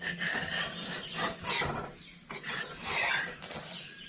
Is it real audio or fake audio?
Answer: real